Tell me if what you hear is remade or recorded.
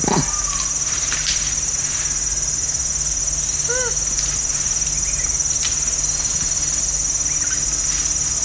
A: recorded